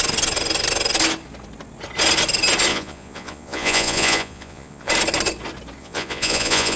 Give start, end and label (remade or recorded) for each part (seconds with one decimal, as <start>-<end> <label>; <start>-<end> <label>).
0.0-2.7 recorded; 2.7-4.9 remade; 4.9-5.8 recorded; 5.8-6.8 remade